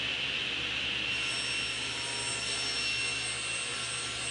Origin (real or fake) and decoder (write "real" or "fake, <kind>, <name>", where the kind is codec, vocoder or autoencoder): real